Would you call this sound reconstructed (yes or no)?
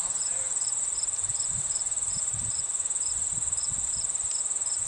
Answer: yes